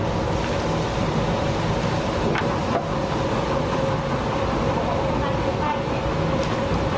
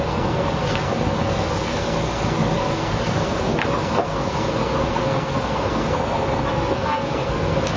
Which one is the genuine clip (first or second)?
first